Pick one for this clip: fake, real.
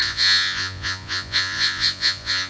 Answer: fake